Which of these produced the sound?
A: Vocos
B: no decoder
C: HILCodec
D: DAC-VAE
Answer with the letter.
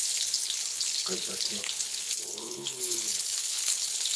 C